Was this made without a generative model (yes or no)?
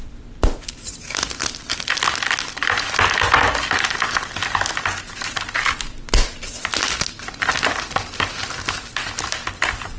yes